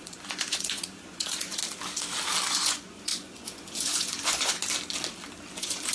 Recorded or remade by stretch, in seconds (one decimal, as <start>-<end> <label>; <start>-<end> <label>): 0.0-1.6 remade; 1.6-2.5 recorded; 2.5-4.6 remade; 4.6-5.5 recorded; 5.5-5.9 remade